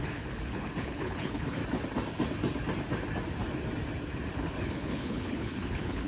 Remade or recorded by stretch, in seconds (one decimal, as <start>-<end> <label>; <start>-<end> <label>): 0.0-1.6 remade; 1.6-4.3 recorded; 4.3-6.1 remade